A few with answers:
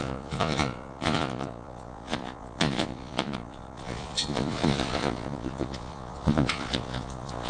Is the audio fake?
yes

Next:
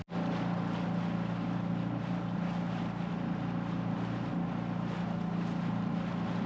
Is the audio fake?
no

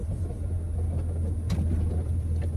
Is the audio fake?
no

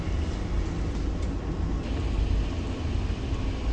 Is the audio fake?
no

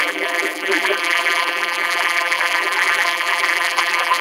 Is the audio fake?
yes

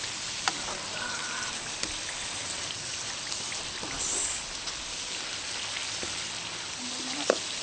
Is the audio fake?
no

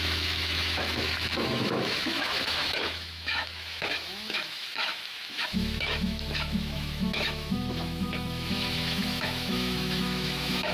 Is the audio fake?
yes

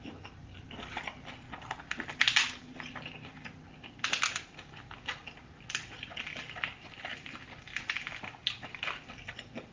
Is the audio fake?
no